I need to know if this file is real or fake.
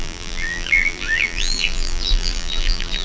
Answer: fake